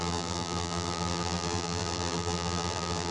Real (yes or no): no